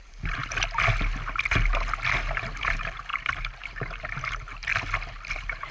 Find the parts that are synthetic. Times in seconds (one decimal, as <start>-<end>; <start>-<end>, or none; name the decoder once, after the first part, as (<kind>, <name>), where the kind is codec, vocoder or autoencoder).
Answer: 0.0-0.4 (vocoder, BigVGAN v2); 2.6-4.7; 5.3-5.7